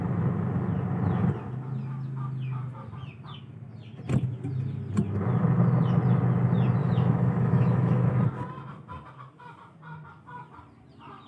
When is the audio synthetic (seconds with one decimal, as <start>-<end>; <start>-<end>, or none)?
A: 6.8-8.1